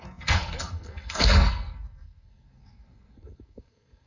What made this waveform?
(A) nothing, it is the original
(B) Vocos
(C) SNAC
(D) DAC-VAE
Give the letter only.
C